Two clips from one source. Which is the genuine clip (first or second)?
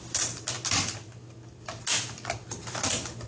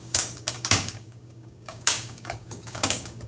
first